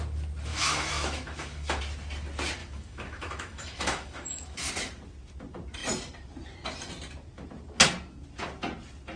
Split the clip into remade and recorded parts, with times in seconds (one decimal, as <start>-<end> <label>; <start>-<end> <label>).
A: 0.0-0.5 recorded; 0.5-1.8 remade; 1.8-2.6 recorded; 2.6-4.7 remade; 4.7-9.2 recorded